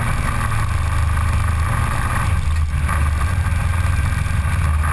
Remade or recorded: recorded